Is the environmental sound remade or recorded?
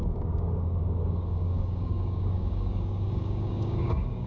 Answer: remade